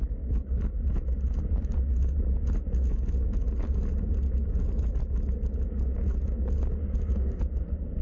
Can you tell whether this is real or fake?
real